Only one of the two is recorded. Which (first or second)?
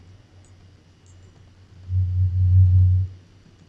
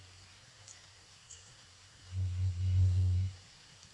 first